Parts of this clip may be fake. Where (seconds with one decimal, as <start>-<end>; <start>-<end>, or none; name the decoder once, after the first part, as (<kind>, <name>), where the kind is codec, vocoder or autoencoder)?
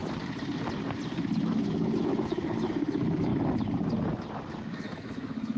1.4-3.3 (autoencoder, DAC-VAE); 4.5-5.6